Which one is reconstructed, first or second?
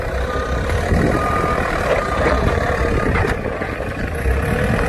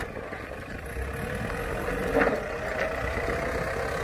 first